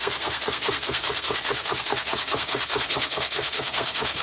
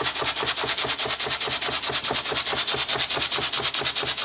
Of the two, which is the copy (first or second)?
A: first